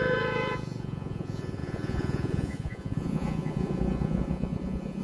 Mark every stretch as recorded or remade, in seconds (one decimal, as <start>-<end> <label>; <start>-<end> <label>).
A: 0.0-5.0 remade